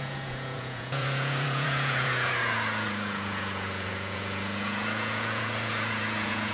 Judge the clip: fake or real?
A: fake